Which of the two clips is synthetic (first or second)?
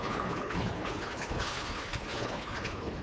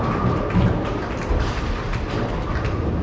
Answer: first